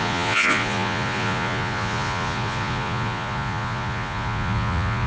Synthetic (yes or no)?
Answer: yes